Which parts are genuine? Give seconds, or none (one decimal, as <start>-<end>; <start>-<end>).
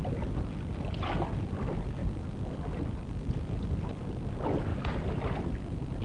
0.0-2.0; 4.1-6.0